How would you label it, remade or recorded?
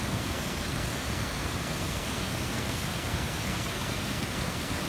remade